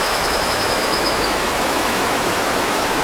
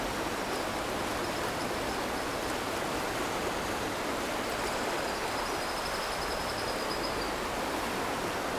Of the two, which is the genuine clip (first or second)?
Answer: second